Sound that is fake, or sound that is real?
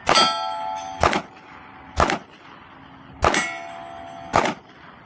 real